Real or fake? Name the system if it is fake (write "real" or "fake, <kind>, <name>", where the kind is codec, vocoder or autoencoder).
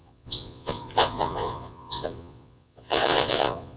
fake, vocoder, Vocos